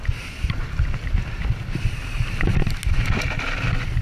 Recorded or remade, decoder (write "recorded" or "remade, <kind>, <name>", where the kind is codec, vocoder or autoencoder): recorded